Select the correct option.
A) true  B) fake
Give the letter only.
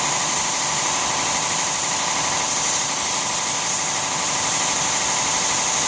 A